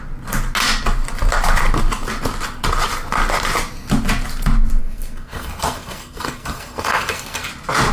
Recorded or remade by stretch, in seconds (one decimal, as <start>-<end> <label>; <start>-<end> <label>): 0.0-4.8 recorded; 4.8-7.5 remade; 7.5-7.9 recorded